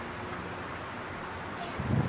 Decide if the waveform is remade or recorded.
recorded